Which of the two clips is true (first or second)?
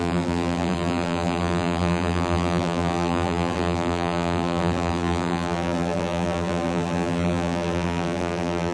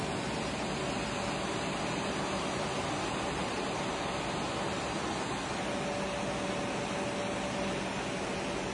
second